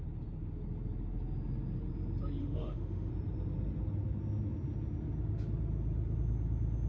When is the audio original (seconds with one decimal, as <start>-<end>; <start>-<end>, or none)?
0.0-2.4; 3.1-6.9